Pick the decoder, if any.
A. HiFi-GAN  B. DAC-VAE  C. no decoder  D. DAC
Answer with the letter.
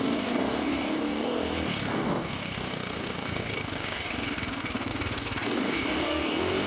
D